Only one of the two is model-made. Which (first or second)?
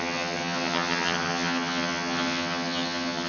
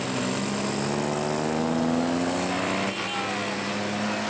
first